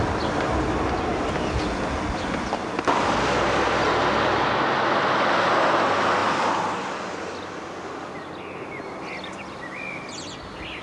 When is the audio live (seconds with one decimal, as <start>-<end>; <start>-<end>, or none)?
0.0-1.1; 1.6-10.8